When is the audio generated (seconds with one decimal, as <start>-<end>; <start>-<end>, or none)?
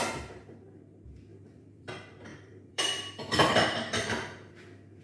1.3-1.9; 2.3-4.5